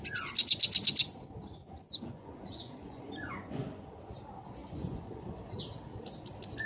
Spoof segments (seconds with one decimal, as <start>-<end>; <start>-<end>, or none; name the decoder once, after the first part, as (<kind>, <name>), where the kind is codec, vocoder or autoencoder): 1.6-3.9 (vocoder, Vocos); 4.6-5.4